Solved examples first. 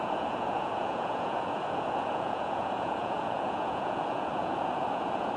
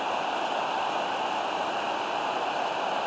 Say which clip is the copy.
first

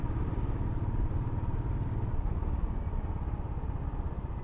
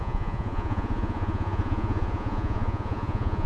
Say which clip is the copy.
second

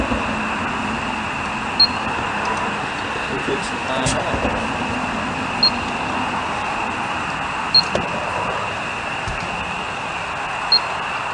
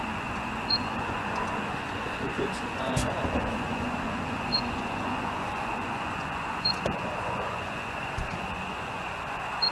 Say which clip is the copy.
second